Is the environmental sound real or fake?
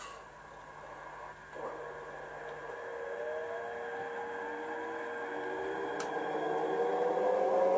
real